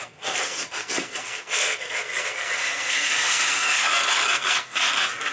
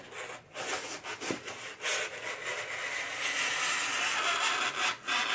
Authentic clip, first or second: second